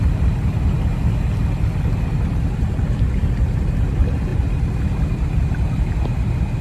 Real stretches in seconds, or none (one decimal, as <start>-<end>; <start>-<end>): 0.0-6.6